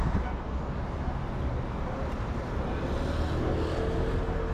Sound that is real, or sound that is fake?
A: real